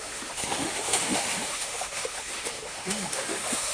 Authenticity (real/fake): fake